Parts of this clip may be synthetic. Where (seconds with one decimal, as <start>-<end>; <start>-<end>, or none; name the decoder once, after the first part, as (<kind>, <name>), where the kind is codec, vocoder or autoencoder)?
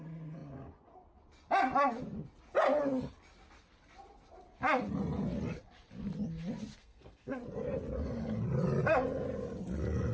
6.8-7.4 (codec, SNAC)